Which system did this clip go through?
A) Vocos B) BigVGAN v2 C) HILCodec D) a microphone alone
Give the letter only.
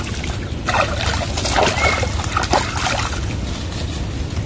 D